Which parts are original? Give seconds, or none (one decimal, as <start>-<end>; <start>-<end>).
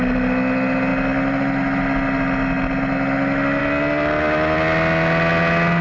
0.0-5.8